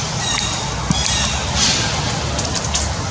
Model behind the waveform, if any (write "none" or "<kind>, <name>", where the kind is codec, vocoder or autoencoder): none